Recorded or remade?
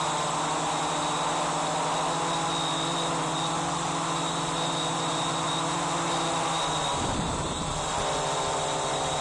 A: recorded